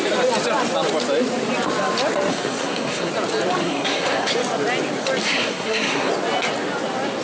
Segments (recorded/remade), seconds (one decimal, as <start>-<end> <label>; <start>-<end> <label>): 0.0-2.3 recorded; 2.3-3.1 remade; 3.1-3.6 recorded; 3.6-4.3 remade; 4.3-5.2 recorded; 5.2-6.1 remade; 6.1-7.2 recorded